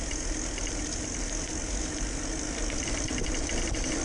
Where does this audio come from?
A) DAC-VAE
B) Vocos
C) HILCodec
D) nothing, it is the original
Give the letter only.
D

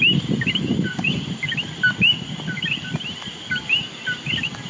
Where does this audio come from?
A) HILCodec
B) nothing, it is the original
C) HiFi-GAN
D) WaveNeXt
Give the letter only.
B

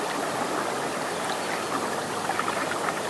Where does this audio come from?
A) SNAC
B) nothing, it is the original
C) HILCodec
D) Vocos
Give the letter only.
B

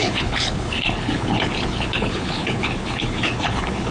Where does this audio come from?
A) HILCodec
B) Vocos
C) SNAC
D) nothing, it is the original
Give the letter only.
A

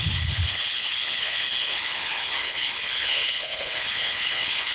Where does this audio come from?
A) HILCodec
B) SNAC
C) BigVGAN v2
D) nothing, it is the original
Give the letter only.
A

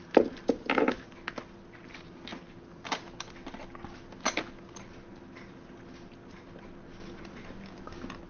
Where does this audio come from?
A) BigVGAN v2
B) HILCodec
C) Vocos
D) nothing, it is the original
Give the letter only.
D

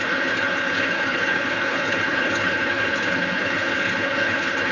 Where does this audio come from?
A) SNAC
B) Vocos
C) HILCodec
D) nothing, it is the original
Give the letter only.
C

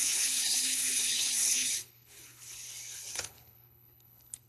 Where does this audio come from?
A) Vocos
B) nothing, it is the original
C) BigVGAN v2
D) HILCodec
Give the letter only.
D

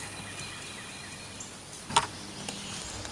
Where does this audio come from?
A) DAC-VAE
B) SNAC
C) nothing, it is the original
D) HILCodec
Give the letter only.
C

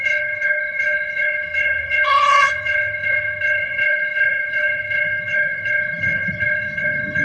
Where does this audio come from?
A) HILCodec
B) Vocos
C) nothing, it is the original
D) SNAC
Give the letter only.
A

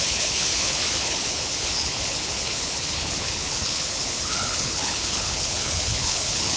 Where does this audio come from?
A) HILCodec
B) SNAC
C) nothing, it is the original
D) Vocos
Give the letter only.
A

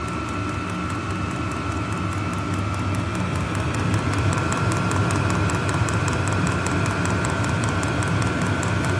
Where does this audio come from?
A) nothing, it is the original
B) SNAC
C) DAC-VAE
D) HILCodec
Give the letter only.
A